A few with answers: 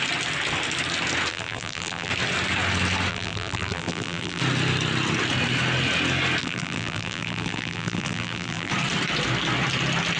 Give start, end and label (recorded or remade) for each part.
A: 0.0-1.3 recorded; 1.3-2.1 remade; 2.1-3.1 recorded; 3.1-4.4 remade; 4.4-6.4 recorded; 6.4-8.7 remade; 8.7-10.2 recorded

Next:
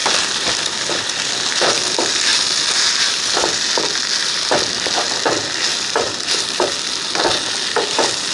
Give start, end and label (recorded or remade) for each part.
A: 0.0-1.2 remade; 1.2-2.3 recorded; 2.3-3.0 remade; 3.0-4.2 recorded; 4.2-4.7 remade; 4.7-5.7 recorded; 5.7-6.5 remade; 6.5-8.3 recorded